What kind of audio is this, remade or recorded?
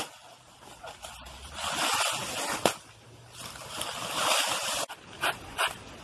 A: recorded